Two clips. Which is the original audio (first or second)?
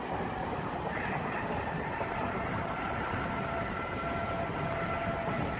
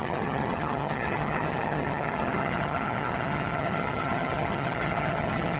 first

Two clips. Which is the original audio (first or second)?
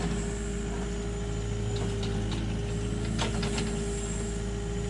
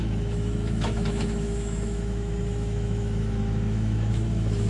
first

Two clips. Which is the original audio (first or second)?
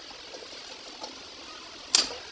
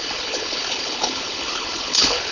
first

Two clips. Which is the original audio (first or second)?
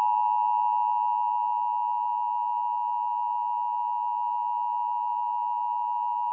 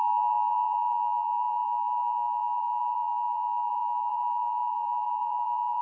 first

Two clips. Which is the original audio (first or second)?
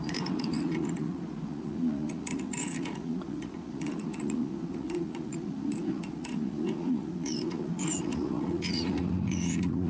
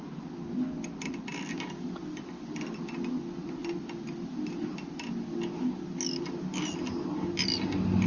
second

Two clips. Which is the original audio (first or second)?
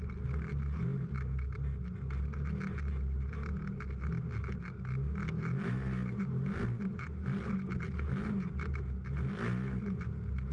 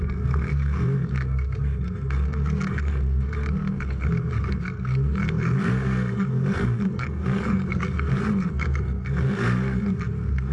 first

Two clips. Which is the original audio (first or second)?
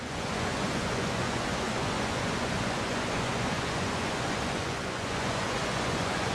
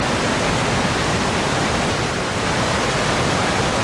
second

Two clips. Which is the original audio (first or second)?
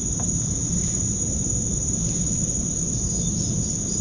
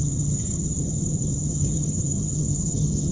first